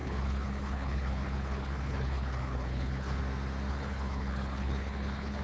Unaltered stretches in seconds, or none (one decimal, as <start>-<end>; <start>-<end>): 3.2-3.7